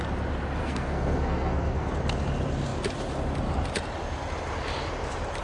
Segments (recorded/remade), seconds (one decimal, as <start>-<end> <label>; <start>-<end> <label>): 0.0-0.6 recorded; 0.6-1.9 remade; 1.9-5.4 recorded